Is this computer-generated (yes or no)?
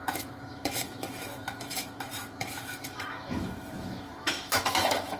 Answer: yes